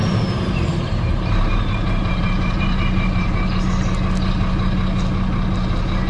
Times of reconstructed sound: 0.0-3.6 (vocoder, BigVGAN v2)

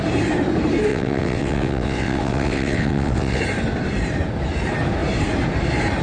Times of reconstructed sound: 0.9-3.4 (vocoder, WaveNeXt)